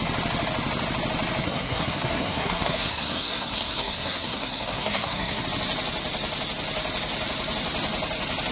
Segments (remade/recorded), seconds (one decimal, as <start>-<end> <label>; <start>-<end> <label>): 0.0-1.4 recorded; 1.4-5.4 remade; 5.4-8.5 recorded